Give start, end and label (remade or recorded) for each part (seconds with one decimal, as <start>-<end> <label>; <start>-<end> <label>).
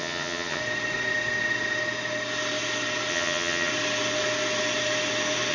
0.0-0.6 remade; 0.6-3.1 recorded; 3.1-3.7 remade; 3.7-5.5 recorded